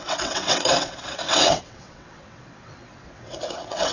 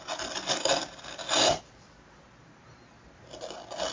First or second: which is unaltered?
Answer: second